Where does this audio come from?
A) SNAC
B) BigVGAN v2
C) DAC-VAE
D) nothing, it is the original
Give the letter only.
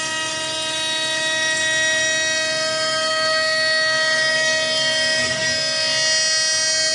D